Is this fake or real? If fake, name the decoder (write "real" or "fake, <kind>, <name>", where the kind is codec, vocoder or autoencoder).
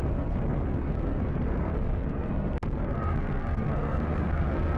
fake, codec, SNAC